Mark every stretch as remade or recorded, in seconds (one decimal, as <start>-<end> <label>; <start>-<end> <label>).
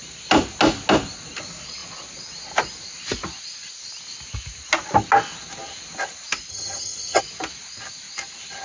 0.0-6.5 recorded; 6.5-7.2 remade; 7.2-8.6 recorded